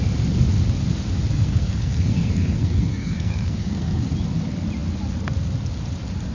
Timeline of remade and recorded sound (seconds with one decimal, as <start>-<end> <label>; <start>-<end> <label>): 0.0-1.3 recorded; 1.3-4.0 remade; 4.0-6.3 recorded

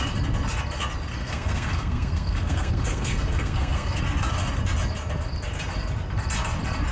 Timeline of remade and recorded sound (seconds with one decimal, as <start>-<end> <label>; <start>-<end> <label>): 0.0-1.2 recorded; 1.2-4.0 remade; 4.0-6.9 recorded

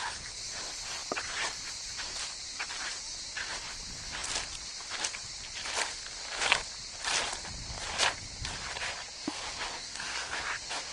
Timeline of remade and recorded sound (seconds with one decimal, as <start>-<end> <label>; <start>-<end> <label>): 0.0-9.7 recorded; 9.7-10.4 remade; 10.4-10.9 recorded

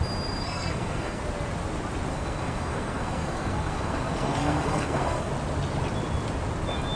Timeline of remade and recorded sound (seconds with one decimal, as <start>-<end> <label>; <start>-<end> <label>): 0.0-0.4 recorded; 0.4-1.2 remade; 1.2-2.1 recorded; 2.1-5.3 remade; 5.3-7.0 recorded